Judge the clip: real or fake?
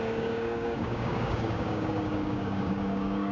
fake